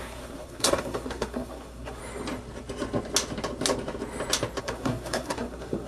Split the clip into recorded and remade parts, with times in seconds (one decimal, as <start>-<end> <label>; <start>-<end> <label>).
0.0-2.0 remade; 2.0-4.6 recorded; 4.6-5.9 remade